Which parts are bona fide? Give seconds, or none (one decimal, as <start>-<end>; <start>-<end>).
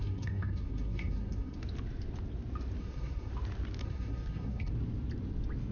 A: 1.6-2.8; 3.3-3.8; 4.7-5.7